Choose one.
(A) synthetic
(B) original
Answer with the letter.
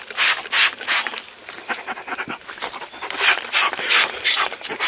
B